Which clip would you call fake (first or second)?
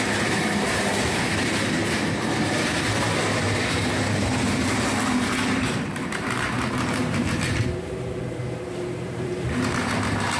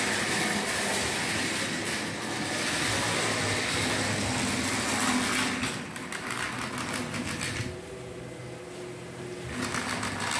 first